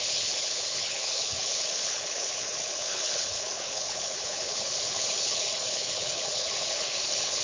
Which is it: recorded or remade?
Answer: remade